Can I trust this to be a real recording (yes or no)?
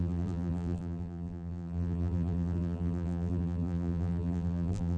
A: no